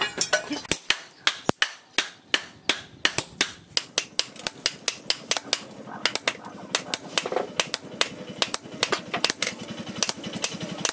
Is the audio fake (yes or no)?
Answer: no